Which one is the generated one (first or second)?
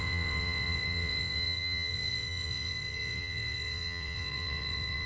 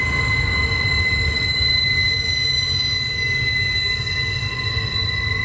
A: first